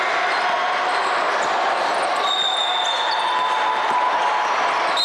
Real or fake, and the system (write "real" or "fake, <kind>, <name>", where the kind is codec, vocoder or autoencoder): real